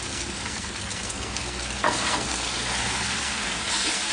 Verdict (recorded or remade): remade